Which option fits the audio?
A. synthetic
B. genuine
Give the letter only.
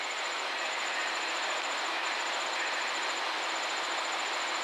B